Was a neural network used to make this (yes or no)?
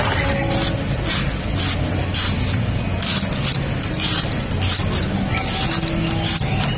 no